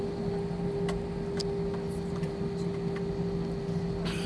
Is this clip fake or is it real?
real